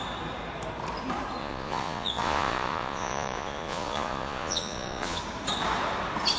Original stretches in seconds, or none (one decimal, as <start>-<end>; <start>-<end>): 0.0-1.4; 5.2-6.4